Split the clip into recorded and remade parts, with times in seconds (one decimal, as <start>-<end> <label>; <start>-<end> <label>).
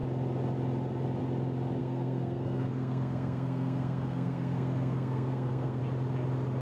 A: 0.0-1.8 recorded; 1.8-5.8 remade; 5.8-6.6 recorded